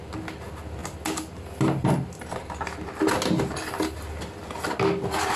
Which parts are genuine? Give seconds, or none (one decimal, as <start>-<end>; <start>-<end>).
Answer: 0.0-5.4

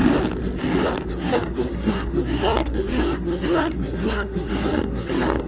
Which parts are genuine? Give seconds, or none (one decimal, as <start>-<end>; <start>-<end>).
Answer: 0.0-1.1